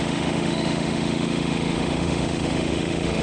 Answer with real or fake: fake